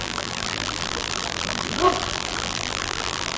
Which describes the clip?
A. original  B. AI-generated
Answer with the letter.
B